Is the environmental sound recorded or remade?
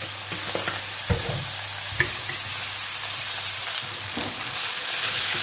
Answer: recorded